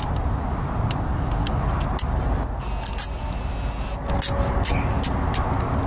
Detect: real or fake real